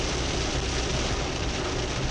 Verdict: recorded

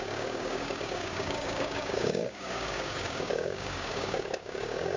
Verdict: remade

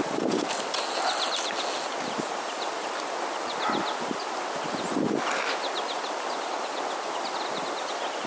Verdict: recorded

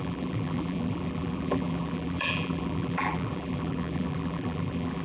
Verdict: remade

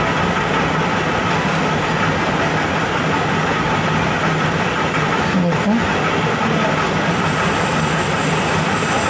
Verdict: recorded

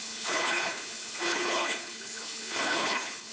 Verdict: remade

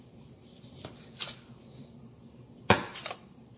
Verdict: remade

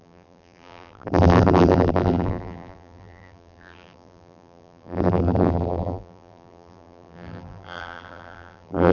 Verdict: remade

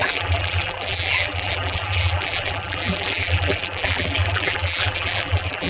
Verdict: remade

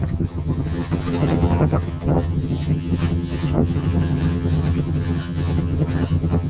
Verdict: remade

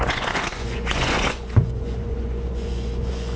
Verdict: remade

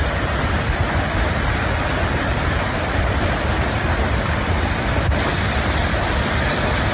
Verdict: remade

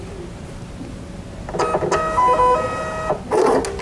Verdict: recorded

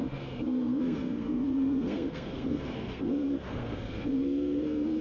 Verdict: remade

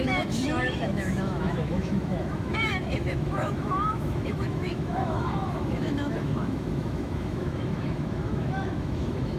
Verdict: remade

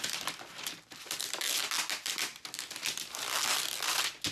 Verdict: recorded